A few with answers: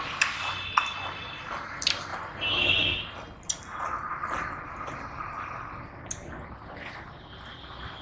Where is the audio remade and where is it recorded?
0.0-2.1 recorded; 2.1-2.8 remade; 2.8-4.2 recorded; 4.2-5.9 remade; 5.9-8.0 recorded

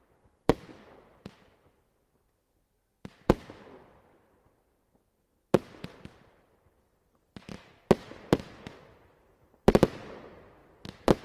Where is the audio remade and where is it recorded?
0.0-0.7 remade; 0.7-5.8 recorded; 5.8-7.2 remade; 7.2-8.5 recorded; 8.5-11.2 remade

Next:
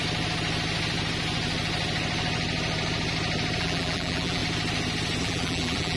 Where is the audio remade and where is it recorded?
0.0-3.6 recorded; 3.6-4.4 remade; 4.4-5.2 recorded; 5.2-6.0 remade

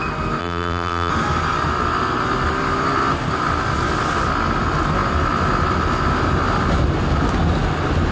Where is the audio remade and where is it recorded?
0.0-0.4 recorded; 0.4-1.1 remade; 1.1-8.1 recorded

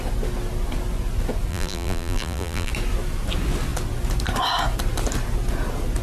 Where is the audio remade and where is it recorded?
0.0-1.5 recorded; 1.5-2.7 remade; 2.7-6.0 recorded

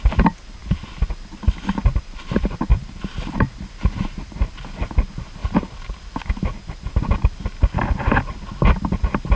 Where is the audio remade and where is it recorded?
0.0-2.7 recorded; 2.7-4.9 remade; 4.9-5.4 recorded; 5.4-6.0 remade; 6.0-9.3 recorded

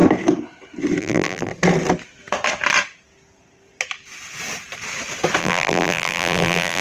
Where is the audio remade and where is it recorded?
0.0-1.0 recorded; 1.0-1.5 remade; 1.5-5.4 recorded; 5.4-6.8 remade